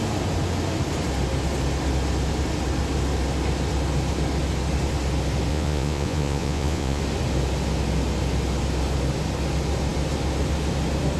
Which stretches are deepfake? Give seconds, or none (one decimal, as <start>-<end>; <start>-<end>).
5.5-7.0